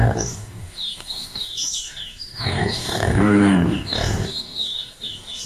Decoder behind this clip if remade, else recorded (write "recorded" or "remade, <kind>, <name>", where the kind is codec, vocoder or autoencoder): remade, codec, DAC